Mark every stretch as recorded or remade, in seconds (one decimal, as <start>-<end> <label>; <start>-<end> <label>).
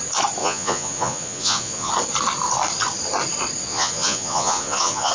0.0-0.4 recorded; 0.4-1.9 remade; 1.9-3.7 recorded; 3.7-5.1 remade